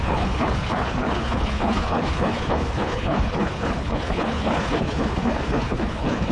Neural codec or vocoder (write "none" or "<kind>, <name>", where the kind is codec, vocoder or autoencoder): codec, HILCodec